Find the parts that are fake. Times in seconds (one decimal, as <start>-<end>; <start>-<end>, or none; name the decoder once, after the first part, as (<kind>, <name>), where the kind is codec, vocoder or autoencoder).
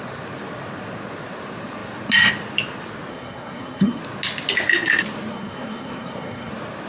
3.1-4.0 (codec, SNAC); 5.3-6.5